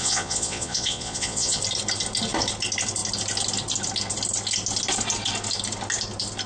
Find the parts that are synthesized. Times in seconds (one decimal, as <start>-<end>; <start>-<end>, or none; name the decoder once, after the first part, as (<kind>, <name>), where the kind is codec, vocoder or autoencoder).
0.0-1.6 (vocoder, Vocos)